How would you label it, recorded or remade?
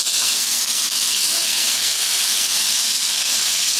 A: remade